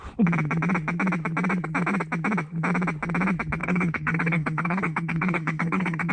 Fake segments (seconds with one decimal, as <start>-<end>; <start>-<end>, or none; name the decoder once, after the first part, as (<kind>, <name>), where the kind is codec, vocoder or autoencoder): 3.6-6.1 (codec, DAC)